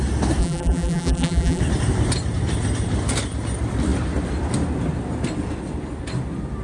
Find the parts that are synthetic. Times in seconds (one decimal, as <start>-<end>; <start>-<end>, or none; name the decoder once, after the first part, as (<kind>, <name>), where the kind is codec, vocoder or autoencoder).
0.4-1.6 (vocoder, BigVGAN v2)